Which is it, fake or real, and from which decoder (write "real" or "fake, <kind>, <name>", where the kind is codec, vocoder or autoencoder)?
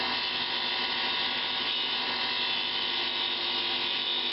real